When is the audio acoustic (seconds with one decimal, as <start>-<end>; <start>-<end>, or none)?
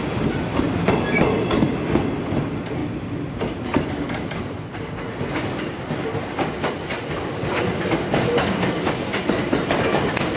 0.0-10.4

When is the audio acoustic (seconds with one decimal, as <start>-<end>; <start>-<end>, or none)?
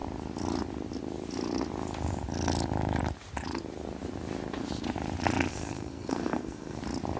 0.0-5.5; 6.8-7.2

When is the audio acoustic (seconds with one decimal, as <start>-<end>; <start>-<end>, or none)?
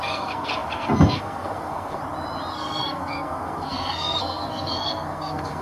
2.0-2.5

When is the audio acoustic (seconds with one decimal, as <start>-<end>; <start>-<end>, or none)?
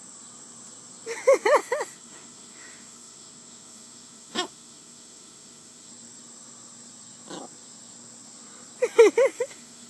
0.0-1.6; 5.9-9.3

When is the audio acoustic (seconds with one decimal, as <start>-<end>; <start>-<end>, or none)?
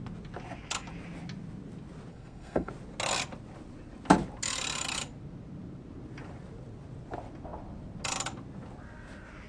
0.0-2.1; 2.7-9.5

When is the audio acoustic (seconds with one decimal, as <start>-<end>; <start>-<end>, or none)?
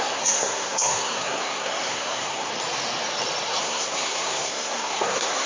2.5-3.6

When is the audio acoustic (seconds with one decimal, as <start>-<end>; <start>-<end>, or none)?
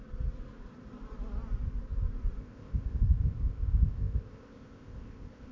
0.0-2.4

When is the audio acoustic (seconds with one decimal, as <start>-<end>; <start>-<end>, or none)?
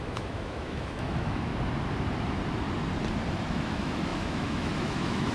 1.5-3.5